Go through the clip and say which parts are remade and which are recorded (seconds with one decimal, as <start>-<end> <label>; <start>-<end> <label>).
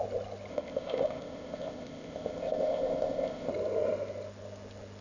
0.0-0.5 recorded; 0.5-3.5 remade; 3.5-5.0 recorded